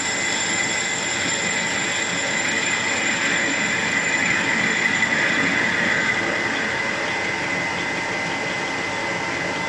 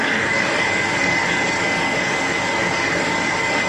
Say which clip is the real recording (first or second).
first